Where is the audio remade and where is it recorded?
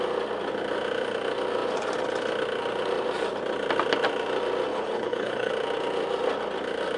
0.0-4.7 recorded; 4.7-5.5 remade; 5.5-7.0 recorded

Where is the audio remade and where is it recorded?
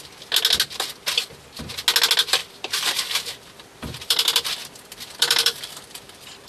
0.0-2.4 recorded; 2.4-6.5 remade